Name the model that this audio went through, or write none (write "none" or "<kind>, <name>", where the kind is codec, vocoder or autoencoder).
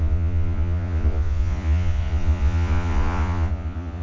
vocoder, Vocos